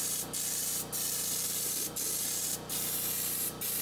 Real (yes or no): yes